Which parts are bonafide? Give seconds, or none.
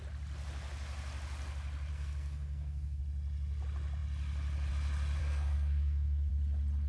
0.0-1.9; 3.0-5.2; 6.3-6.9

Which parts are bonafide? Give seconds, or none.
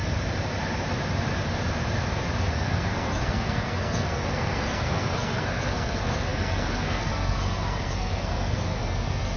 0.0-2.5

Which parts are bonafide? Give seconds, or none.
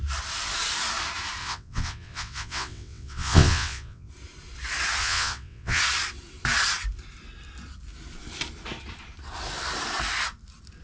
0.0-1.4; 4.1-5.0; 5.8-10.8